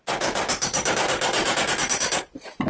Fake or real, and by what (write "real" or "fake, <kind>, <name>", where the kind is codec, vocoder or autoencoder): real